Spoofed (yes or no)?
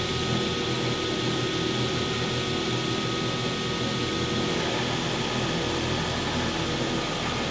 no